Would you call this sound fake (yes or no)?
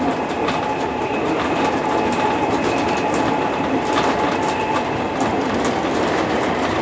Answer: no